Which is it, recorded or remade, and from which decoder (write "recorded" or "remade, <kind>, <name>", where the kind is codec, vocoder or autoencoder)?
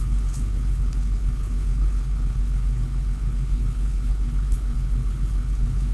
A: remade, codec, HILCodec